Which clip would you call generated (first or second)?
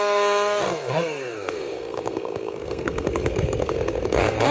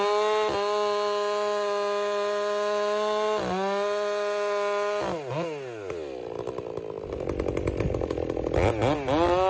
first